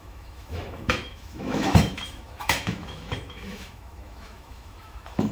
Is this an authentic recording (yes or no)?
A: no